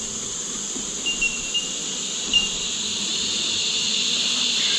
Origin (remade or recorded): recorded